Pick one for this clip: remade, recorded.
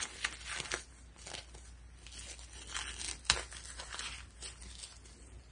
recorded